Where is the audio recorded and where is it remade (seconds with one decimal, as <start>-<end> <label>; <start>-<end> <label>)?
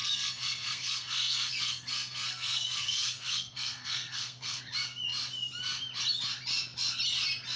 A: 0.0-4.6 remade; 4.6-7.6 recorded